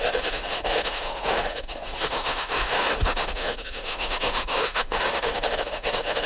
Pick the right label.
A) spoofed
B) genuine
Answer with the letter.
A